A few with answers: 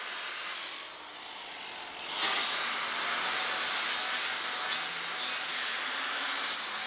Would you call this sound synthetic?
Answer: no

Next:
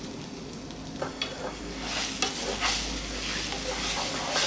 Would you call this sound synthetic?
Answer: no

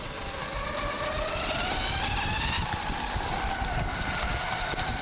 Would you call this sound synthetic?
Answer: no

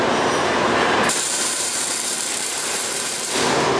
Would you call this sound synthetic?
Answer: yes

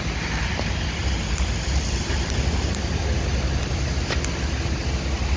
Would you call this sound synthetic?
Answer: yes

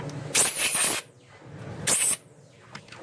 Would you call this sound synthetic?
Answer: no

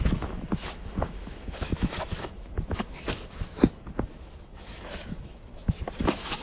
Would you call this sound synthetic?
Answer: yes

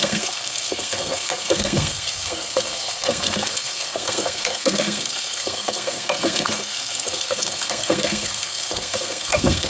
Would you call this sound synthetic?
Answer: yes